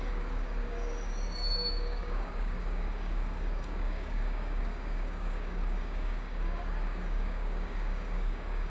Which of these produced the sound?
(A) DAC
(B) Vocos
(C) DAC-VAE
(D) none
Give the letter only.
A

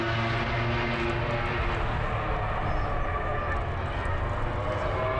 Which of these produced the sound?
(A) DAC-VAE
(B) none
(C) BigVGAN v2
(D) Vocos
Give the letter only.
B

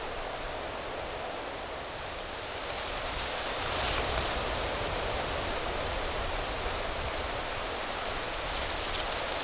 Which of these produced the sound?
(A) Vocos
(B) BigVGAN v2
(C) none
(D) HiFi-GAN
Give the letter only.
C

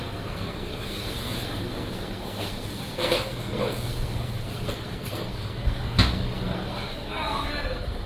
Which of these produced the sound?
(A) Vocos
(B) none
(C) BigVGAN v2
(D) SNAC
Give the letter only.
D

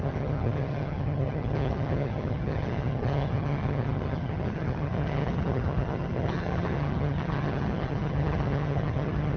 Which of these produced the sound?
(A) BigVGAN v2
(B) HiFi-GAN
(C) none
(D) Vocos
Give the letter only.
B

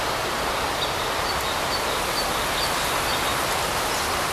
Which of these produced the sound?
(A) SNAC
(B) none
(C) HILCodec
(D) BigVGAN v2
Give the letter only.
B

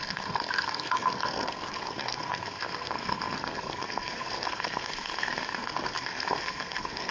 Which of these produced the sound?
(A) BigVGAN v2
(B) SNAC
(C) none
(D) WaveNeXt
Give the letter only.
B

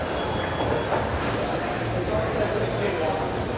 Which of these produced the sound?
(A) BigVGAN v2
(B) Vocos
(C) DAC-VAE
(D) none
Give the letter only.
D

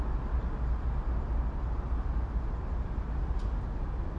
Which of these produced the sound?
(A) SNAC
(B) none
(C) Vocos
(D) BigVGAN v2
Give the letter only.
B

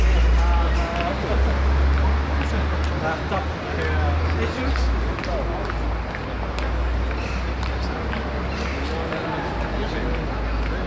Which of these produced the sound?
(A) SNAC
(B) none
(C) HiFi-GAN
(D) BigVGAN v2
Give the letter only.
B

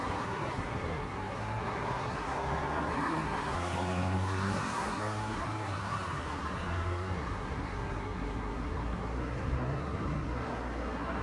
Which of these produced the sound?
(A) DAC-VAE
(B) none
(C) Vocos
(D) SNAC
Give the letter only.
D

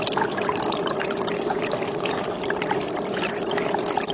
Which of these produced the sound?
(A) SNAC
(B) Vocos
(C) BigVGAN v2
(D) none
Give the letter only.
D